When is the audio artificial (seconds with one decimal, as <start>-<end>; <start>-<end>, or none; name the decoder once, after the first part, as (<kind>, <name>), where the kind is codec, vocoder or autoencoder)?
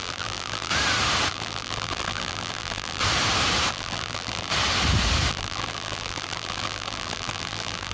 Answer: 0.0-0.7 (vocoder, BigVGAN v2); 1.3-3.0; 3.7-4.5; 5.3-7.9